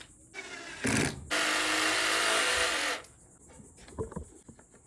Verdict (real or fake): real